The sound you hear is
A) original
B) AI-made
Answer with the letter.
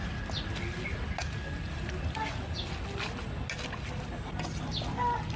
A